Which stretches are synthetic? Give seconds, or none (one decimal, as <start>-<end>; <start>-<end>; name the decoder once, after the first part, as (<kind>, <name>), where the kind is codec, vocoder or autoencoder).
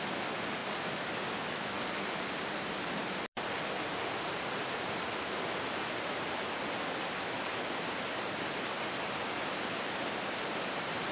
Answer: none